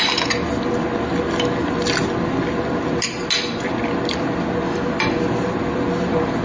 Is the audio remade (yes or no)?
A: no